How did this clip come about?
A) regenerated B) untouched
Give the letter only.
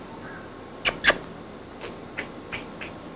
B